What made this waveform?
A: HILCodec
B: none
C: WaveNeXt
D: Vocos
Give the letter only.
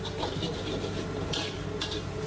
B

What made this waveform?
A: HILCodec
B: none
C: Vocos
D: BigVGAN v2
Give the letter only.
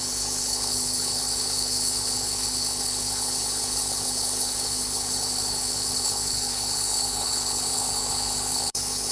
A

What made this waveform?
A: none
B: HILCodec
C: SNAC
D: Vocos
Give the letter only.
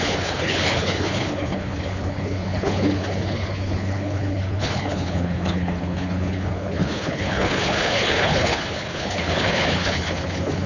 B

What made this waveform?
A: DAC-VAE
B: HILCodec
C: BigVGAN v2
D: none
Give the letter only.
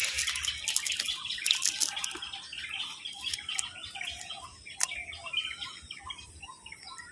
D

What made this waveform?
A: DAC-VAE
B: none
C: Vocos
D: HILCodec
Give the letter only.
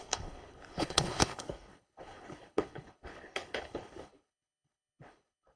D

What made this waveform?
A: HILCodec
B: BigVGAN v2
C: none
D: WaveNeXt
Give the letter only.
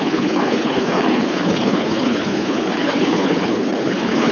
A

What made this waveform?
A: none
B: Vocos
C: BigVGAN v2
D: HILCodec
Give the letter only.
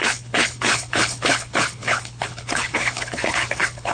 D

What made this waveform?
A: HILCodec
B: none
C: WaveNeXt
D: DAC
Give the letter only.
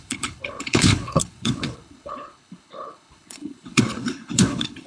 A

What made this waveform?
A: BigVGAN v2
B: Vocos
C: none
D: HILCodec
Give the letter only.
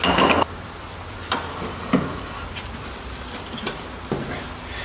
C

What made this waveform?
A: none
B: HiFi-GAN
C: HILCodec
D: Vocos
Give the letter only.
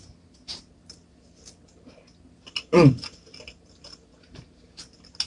A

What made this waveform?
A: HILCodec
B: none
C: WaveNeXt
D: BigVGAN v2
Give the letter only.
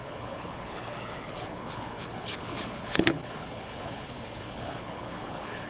A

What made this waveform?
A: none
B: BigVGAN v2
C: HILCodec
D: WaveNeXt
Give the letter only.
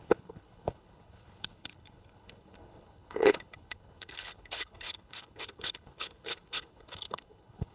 C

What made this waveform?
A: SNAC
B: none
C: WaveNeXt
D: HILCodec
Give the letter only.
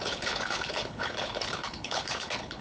D